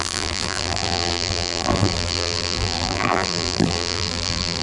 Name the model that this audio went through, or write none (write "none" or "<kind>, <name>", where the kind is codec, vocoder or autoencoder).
vocoder, BigVGAN v2